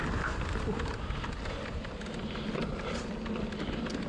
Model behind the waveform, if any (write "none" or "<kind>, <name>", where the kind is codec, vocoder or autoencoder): none